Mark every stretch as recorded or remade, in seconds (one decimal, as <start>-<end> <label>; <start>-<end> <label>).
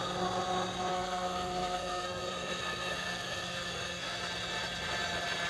0.0-0.9 recorded; 0.9-4.2 remade; 4.2-5.5 recorded